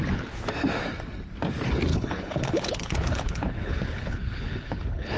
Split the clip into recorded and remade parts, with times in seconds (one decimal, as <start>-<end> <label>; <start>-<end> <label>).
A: 0.0-1.9 recorded; 1.9-5.2 remade